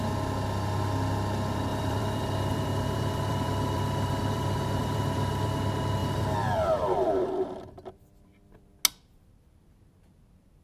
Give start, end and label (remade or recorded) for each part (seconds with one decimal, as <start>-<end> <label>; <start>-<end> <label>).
0.0-1.7 recorded; 1.7-5.6 remade; 5.6-6.0 recorded; 6.0-7.9 remade; 7.9-10.6 recorded